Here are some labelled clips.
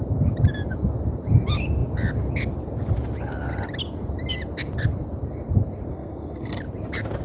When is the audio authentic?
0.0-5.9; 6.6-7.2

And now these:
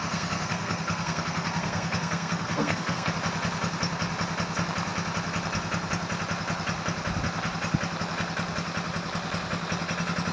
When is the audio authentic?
3.1-10.3